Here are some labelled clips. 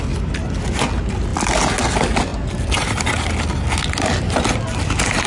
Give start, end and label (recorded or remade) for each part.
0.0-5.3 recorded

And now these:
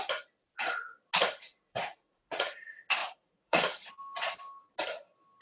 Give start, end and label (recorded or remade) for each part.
0.0-1.5 recorded; 1.5-2.6 remade; 2.6-3.0 recorded; 3.0-3.9 remade; 3.9-5.4 recorded